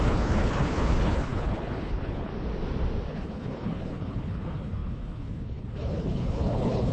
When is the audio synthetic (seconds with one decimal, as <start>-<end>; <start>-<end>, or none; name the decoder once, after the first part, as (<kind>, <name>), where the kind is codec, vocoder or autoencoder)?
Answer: 0.0-2.3 (codec, HILCodec); 3.1-6.9